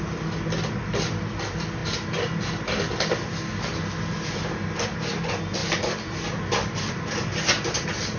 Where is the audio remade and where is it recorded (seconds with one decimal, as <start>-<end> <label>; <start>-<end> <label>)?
0.0-8.2 recorded